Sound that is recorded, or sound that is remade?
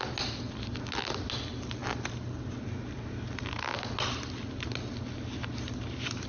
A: recorded